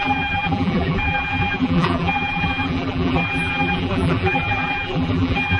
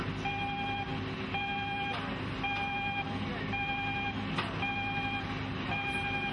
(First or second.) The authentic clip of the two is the second